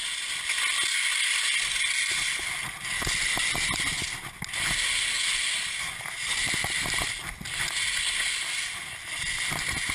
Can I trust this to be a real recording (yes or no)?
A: yes